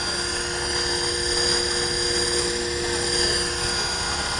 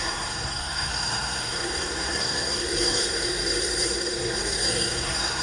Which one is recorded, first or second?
first